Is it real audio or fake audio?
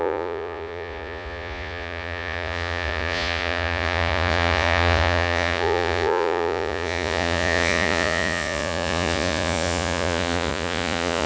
fake